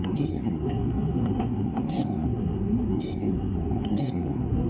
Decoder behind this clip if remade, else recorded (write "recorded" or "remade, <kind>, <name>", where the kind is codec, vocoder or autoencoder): remade, codec, SNAC